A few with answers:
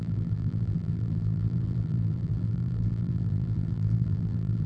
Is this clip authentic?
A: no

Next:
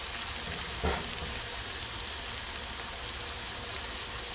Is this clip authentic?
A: yes